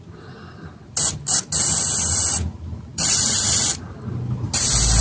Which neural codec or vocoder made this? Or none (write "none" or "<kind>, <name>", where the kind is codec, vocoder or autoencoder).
none